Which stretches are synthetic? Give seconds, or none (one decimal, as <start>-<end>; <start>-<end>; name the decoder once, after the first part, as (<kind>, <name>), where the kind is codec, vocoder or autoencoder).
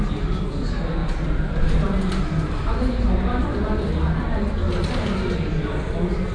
none